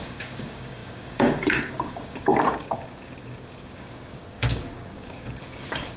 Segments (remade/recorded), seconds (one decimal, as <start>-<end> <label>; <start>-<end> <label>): 0.0-6.0 remade